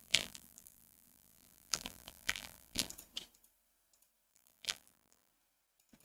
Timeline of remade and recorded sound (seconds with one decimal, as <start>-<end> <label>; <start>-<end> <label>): 0.0-2.9 remade; 2.9-4.3 recorded; 4.3-5.3 remade; 5.3-6.0 recorded